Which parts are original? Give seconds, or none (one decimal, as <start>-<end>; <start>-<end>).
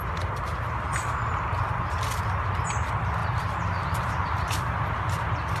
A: 0.0-3.2; 5.0-5.6